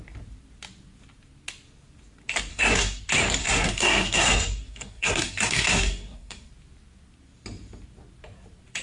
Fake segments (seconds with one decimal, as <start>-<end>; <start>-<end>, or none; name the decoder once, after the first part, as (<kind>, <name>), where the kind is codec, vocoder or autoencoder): 2.5-3.0 (codec, SNAC); 3.4-6.5

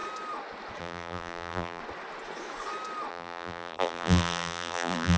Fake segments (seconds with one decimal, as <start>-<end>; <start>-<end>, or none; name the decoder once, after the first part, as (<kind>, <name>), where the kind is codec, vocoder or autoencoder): 0.8-1.8 (vocoder, BigVGAN v2); 3.1-5.2

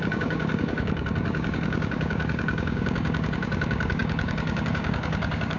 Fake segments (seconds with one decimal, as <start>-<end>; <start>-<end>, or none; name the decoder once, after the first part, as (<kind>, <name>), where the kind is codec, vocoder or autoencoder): 0.0-5.6 (codec, DAC)

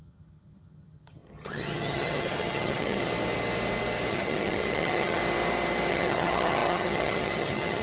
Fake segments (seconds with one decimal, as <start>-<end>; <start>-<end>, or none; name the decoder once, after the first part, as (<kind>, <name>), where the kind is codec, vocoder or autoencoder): 0.0-3.1 (vocoder, HiFi-GAN); 4.1-5.2; 5.9-7.8

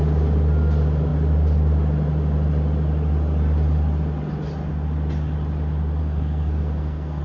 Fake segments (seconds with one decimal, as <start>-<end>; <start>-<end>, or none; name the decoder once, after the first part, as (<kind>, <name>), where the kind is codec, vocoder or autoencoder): 6.0-7.2 (codec, SNAC)

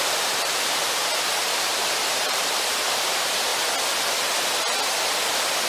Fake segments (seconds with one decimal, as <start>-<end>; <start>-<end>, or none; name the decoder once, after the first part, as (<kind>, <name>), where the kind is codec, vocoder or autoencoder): 0.0-1.0 (vocoder, BigVGAN v2); 1.7-3.5

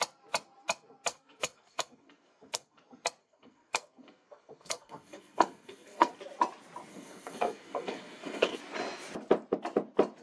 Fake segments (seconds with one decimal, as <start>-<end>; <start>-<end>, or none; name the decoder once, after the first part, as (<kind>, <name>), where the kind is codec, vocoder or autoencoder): 1.1-2.8 (codec, SNAC); 3.2-6.1; 6.9-8.6